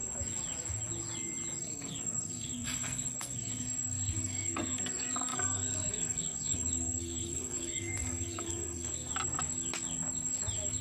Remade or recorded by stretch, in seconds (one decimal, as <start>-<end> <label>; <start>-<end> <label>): 0.0-1.6 recorded; 1.6-9.1 remade; 9.1-10.8 recorded